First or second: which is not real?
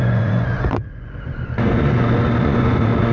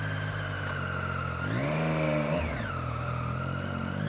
first